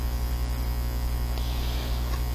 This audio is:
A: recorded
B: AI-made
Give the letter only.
A